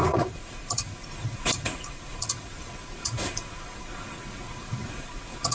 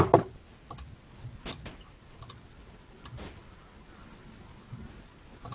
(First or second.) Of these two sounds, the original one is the second